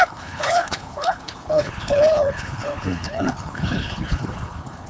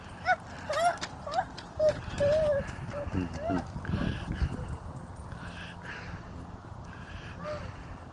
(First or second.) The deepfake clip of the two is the first